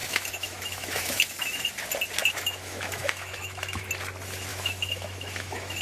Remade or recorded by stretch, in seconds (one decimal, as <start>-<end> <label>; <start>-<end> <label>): 0.0-1.7 remade; 1.7-2.2 recorded; 2.2-3.9 remade; 3.9-4.5 recorded; 4.5-5.8 remade